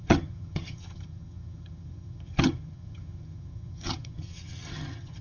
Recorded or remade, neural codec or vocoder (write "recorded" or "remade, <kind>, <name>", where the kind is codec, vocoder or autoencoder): remade, vocoder, HiFi-GAN